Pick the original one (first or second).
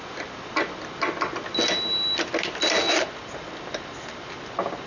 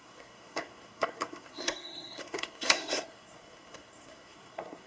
first